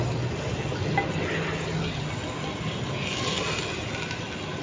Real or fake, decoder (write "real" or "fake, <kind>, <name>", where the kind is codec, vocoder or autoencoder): real